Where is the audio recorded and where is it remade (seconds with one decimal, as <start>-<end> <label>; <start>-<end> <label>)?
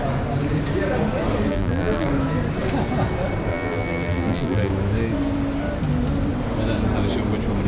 0.0-1.5 recorded; 1.5-2.1 remade; 2.1-3.5 recorded; 3.5-4.7 remade; 4.7-7.7 recorded